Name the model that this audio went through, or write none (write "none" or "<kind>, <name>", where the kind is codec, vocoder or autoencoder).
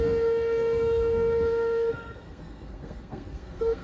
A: codec, SNAC